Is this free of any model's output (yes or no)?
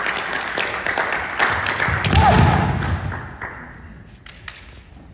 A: yes